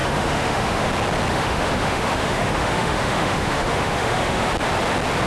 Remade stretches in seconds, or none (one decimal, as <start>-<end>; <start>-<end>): 0.0-0.9; 1.3-4.5